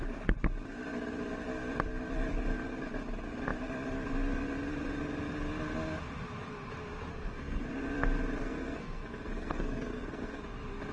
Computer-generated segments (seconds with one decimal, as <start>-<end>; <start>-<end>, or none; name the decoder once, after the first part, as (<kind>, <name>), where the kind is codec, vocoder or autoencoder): 7.1-7.7 (codec, SNAC); 8.4-10.4